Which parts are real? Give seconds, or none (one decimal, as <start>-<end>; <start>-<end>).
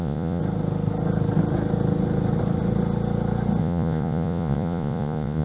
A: 0.4-3.6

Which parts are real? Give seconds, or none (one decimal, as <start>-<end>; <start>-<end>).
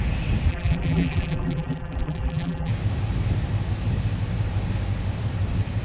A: 0.0-0.5; 2.7-5.8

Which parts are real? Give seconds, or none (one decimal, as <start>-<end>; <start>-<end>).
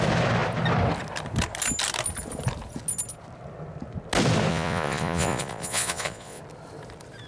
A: 0.0-4.5; 6.4-7.3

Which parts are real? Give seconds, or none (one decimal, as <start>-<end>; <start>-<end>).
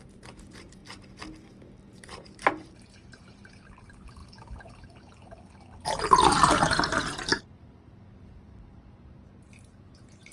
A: 0.8-1.9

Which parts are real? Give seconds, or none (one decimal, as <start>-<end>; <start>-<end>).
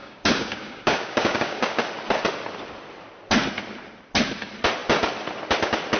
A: 1.8-6.0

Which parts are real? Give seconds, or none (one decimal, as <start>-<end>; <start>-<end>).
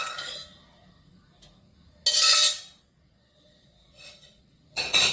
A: 0.4-2.8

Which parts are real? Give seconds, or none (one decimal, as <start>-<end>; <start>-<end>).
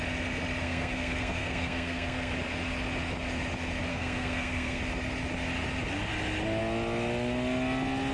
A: 0.0-0.6; 2.3-3.9; 4.8-8.1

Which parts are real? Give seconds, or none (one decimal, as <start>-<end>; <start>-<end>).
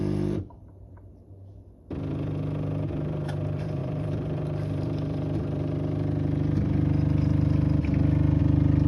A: 1.5-2.1